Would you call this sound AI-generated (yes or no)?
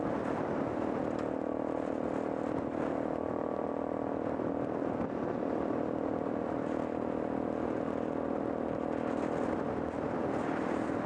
no